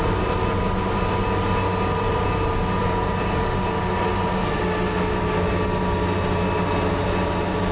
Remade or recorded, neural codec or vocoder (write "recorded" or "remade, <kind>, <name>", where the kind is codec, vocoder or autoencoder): recorded